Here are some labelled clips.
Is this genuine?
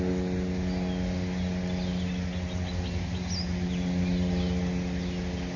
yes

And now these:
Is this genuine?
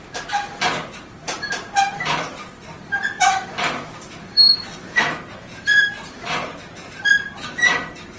no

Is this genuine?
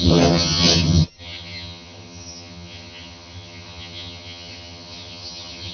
no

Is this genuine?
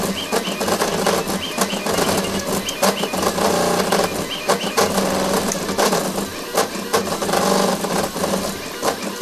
yes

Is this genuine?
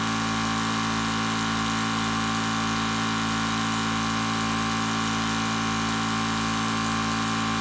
yes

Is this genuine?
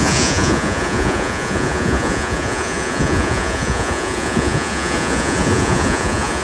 no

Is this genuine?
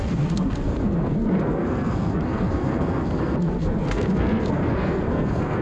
no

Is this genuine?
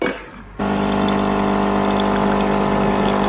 yes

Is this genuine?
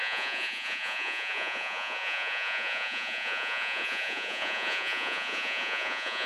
no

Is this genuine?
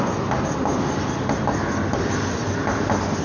yes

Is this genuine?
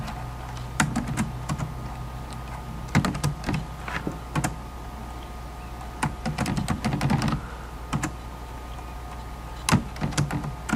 yes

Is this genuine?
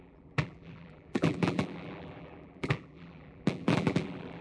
no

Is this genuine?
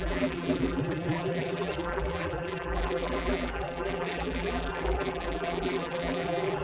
no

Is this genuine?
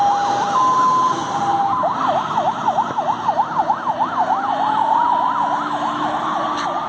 yes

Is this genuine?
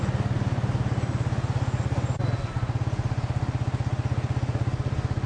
yes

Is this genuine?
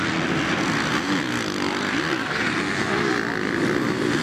yes